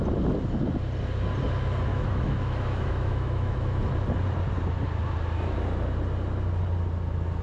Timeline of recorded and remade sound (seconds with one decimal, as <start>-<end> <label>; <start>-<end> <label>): 0.0-1.9 recorded; 1.9-3.8 remade; 3.8-7.4 recorded